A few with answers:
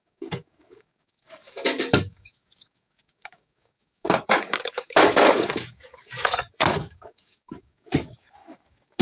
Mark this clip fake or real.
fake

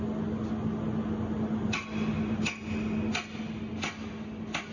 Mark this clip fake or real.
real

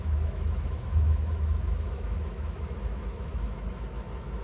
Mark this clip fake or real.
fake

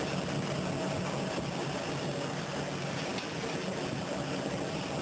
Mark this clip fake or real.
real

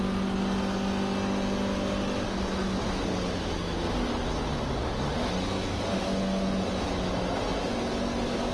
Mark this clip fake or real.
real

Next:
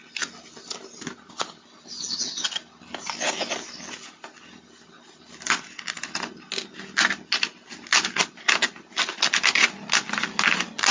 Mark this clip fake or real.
real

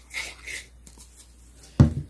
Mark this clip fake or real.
real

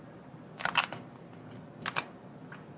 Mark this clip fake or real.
real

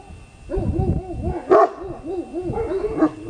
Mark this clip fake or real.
real